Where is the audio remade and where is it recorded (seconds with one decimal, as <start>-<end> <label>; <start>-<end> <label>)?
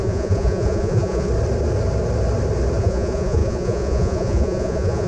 0.0-1.3 remade; 1.3-2.8 recorded; 2.8-5.1 remade